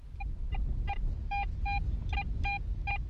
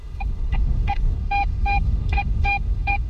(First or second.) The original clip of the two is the first